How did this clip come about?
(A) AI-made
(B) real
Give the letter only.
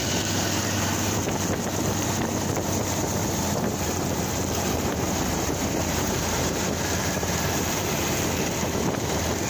A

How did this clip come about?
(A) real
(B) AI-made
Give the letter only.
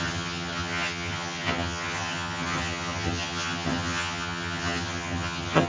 B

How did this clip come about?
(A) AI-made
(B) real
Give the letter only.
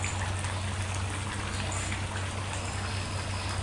B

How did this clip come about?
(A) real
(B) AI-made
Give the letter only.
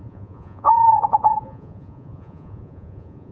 B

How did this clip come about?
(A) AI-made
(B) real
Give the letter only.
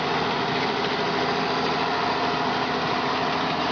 B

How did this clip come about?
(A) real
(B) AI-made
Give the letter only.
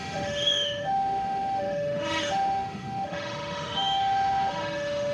B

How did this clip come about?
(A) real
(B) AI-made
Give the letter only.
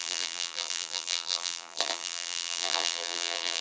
B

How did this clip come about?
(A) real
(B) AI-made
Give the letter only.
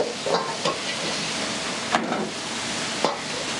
A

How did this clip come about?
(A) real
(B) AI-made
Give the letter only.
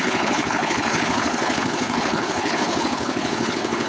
B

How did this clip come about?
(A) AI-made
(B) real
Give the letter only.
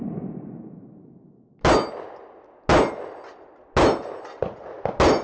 B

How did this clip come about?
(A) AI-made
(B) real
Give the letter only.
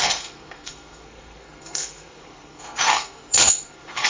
A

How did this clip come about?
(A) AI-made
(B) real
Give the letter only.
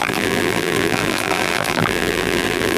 A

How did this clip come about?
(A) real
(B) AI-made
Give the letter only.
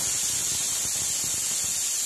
A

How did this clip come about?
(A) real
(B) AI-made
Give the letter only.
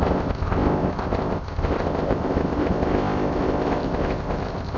B